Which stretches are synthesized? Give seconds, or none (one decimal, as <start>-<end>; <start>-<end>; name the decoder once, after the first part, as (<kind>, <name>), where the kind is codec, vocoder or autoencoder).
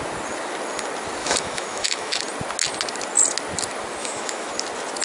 1.2-2.2 (autoencoder, DAC-VAE); 4.0-4.5